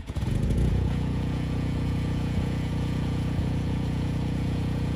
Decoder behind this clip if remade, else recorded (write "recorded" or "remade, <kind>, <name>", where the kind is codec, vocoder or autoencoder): remade, vocoder, Vocos